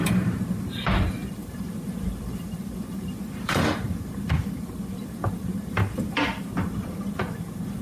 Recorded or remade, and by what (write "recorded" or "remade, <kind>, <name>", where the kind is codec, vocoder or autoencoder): remade, vocoder, BigVGAN v2